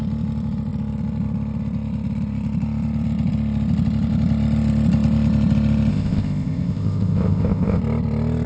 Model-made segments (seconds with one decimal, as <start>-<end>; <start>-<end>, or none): 5.9-7.8